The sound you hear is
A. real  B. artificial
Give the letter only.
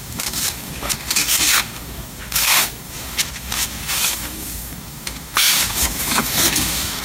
B